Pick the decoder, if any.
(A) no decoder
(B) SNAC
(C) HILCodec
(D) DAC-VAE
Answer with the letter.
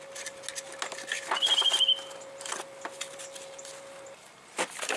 A